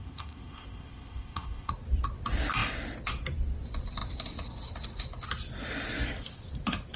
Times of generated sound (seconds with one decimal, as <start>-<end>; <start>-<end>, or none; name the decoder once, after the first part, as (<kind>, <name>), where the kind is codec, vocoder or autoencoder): 0.0-1.7 (codec, ZipCodec)

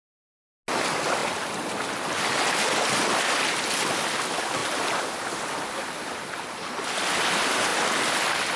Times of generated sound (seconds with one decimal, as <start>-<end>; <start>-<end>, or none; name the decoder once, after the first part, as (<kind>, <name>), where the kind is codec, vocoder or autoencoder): none

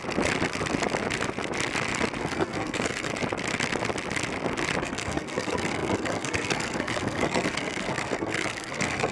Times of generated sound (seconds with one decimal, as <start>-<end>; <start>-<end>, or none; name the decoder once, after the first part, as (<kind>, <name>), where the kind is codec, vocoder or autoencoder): 2.2-3.1 (codec, SNAC); 4.8-9.1

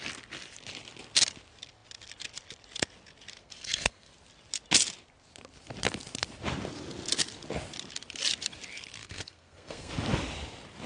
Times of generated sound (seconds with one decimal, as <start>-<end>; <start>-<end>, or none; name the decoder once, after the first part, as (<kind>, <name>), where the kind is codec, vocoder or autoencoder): 3.4-4.1 (codec, SNAC); 9.0-9.9

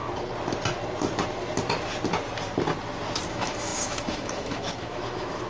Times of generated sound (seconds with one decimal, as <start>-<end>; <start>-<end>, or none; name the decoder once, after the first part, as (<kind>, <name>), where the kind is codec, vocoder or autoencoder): 3.3-5.5 (autoencoder, DAC-VAE)